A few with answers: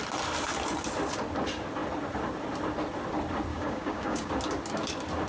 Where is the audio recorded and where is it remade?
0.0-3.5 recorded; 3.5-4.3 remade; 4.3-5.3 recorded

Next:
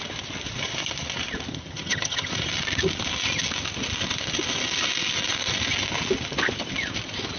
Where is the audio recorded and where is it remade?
0.0-1.5 recorded; 1.5-2.3 remade; 2.3-7.4 recorded

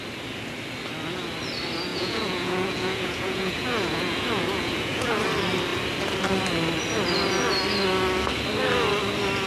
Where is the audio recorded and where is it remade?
0.0-1.9 recorded; 1.9-5.2 remade; 5.2-9.5 recorded

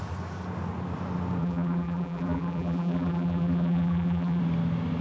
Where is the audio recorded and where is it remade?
0.0-1.4 recorded; 1.4-4.4 remade; 4.4-5.0 recorded

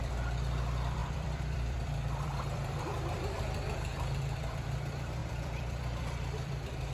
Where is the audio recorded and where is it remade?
0.0-6.9 remade

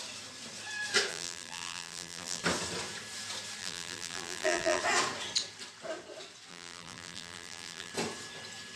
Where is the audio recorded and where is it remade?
0.0-1.1 recorded; 1.1-2.4 remade; 2.4-3.6 recorded; 3.6-4.8 remade; 4.8-6.5 recorded; 6.5-7.9 remade; 7.9-8.8 recorded